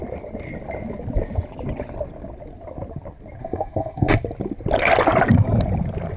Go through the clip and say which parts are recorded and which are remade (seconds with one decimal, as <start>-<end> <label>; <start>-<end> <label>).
0.0-3.4 recorded; 3.4-4.1 remade; 4.1-6.2 recorded